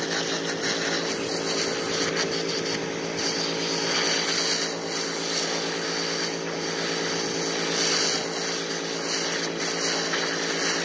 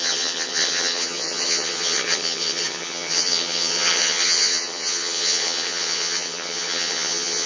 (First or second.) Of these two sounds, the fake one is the second